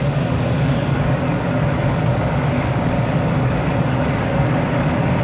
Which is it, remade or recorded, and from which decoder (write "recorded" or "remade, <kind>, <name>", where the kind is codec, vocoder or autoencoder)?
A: remade, codec, DAC